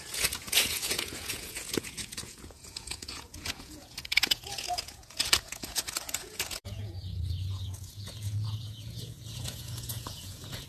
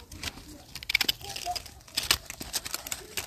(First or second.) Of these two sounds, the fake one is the first